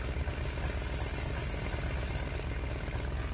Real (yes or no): yes